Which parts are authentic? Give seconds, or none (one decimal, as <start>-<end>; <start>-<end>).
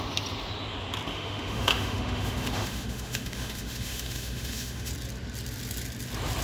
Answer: 0.0-1.1; 4.9-6.4